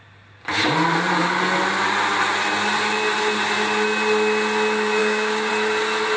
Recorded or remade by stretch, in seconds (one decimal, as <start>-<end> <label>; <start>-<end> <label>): 0.0-5.0 recorded; 5.0-5.5 remade; 5.5-6.2 recorded